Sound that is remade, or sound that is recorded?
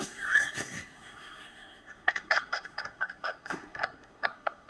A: remade